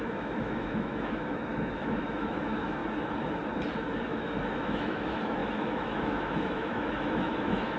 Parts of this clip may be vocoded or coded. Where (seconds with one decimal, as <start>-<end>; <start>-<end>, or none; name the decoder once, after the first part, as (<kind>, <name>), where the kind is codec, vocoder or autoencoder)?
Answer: 0.0-2.8 (autoencoder, DAC-VAE); 4.2-7.8